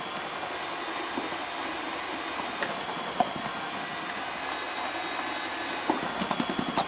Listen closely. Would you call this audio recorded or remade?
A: recorded